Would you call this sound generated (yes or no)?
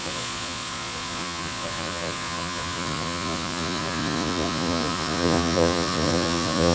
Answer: yes